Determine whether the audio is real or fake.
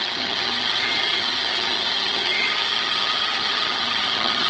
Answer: fake